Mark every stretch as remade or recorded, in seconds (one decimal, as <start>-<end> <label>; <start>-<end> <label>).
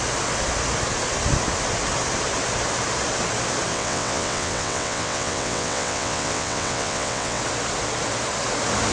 0.0-3.7 recorded; 3.7-7.4 remade; 7.4-8.9 recorded